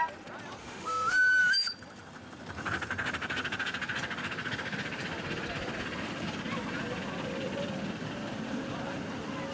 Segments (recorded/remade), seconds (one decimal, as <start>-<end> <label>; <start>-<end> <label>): 0.0-0.6 recorded; 0.6-1.4 remade; 1.4-9.5 recorded